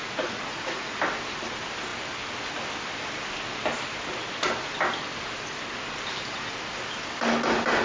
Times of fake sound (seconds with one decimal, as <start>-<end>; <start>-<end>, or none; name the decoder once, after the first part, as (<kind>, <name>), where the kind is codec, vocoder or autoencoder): 0.0-0.9 (vocoder, Vocos)